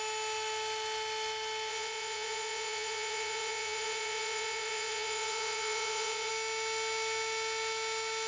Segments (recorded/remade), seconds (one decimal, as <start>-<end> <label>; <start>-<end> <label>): 0.0-1.7 recorded; 1.7-6.3 remade; 6.3-8.3 recorded